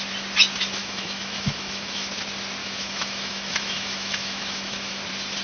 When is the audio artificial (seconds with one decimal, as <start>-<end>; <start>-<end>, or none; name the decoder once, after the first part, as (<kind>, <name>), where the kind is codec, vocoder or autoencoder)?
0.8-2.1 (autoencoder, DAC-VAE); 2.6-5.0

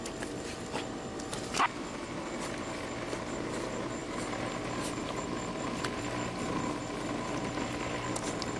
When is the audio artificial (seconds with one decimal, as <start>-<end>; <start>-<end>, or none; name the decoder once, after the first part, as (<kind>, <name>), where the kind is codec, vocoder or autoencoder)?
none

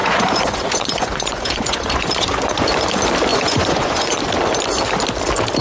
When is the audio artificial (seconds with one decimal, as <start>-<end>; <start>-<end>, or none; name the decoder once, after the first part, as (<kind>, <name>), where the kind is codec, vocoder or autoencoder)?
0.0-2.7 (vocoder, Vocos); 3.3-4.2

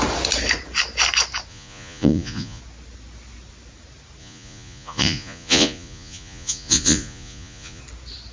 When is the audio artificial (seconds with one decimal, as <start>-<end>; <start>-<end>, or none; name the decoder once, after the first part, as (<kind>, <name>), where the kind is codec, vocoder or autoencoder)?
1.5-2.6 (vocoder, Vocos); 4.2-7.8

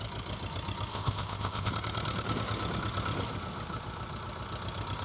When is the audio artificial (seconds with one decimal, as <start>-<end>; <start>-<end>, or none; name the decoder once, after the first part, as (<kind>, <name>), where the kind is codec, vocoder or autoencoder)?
0.9-1.7 (codec, ZipCodec)